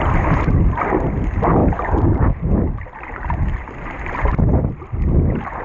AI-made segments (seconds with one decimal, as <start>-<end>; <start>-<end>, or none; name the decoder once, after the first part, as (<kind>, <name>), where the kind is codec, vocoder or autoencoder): 1.6-2.3 (vocoder, BigVGAN v2)